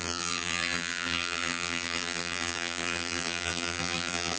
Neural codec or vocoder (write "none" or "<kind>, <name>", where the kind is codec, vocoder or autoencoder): vocoder, BigVGAN v2